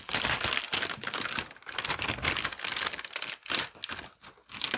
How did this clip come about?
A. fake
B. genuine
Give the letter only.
B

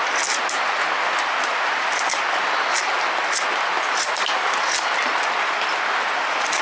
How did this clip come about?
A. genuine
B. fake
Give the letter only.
A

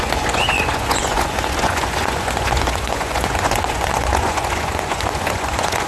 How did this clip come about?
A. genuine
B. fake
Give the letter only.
B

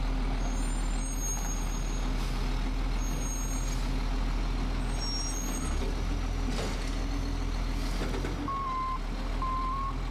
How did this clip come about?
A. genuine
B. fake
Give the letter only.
A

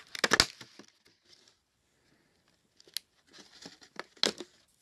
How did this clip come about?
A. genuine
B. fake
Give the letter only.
A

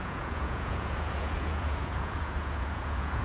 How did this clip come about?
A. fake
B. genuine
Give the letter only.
A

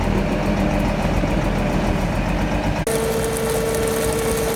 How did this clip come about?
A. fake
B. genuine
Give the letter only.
B